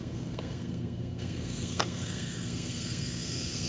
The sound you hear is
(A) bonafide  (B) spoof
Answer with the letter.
B